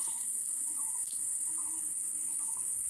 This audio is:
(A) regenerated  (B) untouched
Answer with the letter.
A